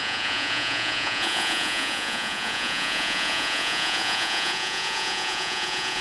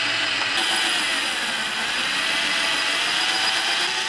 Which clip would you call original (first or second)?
second